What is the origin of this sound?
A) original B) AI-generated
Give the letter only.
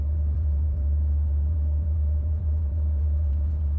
B